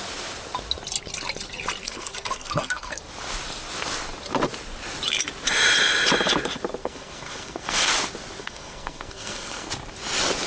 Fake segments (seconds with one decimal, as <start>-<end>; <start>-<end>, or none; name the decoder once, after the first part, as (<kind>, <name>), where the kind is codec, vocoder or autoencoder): 1.8-3.0 (codec, SNAC); 6.8-7.9; 8.4-9.7